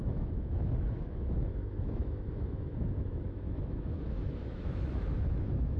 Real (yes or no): no